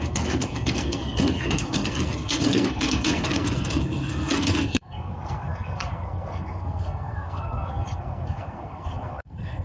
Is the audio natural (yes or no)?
no